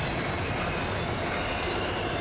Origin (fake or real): real